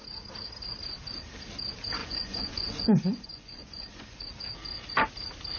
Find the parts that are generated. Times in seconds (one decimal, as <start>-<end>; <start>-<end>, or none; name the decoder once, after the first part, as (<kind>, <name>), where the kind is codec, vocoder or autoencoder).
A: 2.0-4.3 (vocoder, Vocos)